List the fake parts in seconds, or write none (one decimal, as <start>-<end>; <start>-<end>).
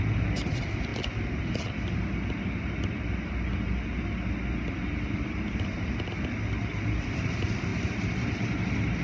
none